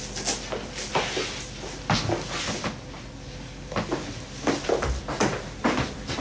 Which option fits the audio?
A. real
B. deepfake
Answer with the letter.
A